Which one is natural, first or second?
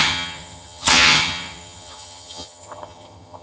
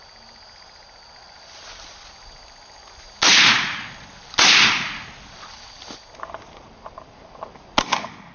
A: second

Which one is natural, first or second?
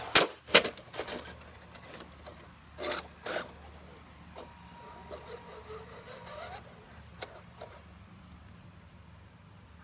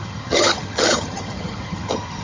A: first